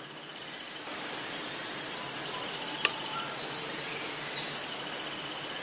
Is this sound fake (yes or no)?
no